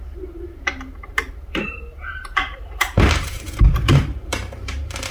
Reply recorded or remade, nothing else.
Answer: remade